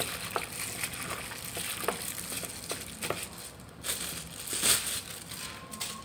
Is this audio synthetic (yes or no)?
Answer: no